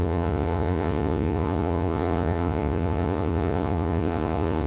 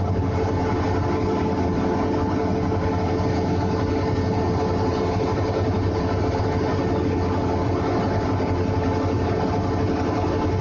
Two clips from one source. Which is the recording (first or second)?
second